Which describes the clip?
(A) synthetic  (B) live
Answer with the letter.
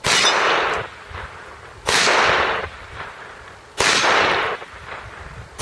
A